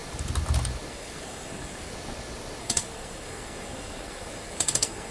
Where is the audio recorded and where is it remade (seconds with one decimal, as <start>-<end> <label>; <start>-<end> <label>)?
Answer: 0.0-0.9 recorded; 0.9-1.9 remade; 1.9-2.6 recorded; 2.6-5.1 remade